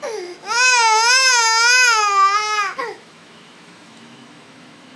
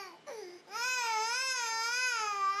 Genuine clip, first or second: second